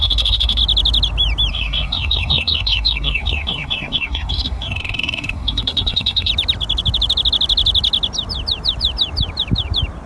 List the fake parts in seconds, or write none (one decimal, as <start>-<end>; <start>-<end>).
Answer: 0.0-0.6; 1.5-6.3